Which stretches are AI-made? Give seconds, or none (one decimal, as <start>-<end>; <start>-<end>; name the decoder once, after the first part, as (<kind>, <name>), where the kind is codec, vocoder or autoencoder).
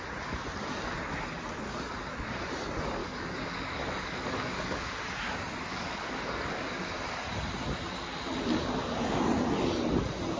3.0-4.9 (codec, DAC); 5.7-6.8